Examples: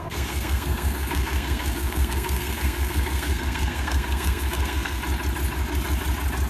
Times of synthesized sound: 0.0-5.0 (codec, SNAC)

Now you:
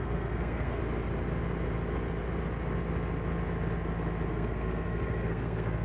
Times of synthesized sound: 0.0-0.8 (codec, SNAC); 4.3-5.8